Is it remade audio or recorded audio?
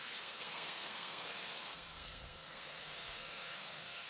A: remade